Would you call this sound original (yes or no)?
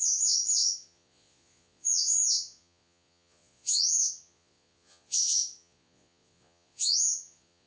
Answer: no